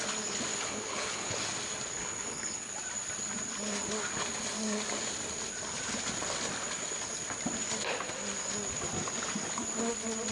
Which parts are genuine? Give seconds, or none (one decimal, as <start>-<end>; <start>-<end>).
0.0-0.5; 1.4-2.0; 2.7-10.3